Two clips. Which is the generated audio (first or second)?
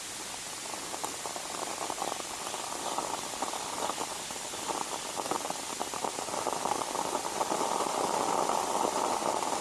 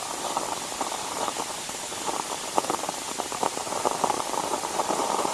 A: second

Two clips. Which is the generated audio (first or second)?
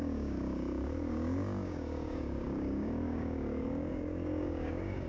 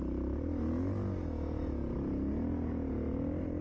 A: first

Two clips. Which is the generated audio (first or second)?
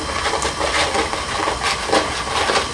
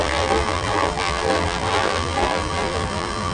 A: second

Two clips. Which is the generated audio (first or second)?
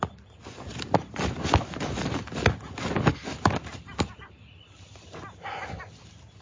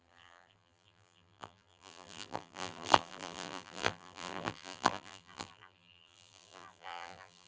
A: second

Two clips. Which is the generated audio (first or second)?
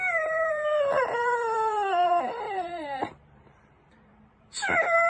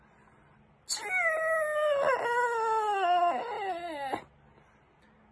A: first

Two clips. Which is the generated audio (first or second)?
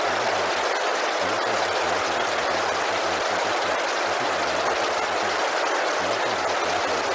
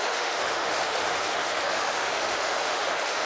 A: second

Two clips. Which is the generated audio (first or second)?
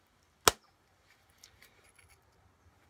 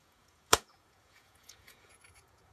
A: second